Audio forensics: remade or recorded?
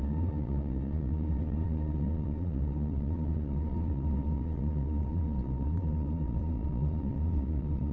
remade